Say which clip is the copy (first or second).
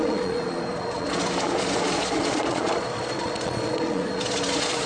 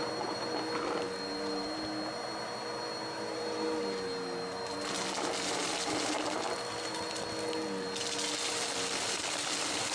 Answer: first